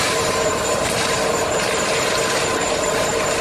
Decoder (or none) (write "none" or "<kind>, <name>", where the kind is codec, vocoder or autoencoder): vocoder, BigVGAN v2